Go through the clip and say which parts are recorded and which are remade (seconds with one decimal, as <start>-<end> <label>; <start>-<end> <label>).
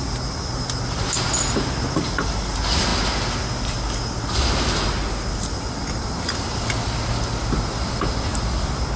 0.0-9.0 recorded